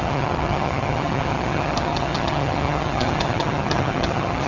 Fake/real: fake